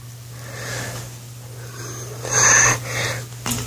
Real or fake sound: real